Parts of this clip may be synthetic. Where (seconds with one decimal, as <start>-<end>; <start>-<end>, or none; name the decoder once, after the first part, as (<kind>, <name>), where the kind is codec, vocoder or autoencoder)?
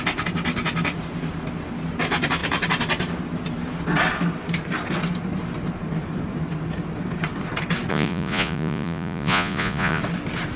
7.9-10.0 (vocoder, Vocos)